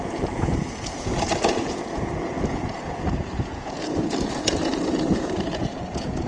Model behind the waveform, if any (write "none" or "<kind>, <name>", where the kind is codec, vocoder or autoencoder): vocoder, Vocos